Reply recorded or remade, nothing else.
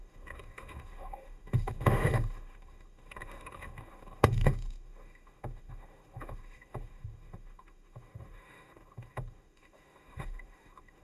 remade